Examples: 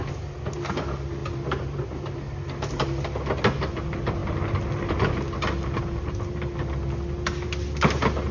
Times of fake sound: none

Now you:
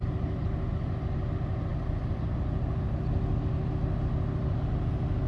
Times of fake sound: none

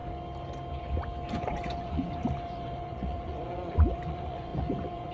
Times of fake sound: 1.3-5.1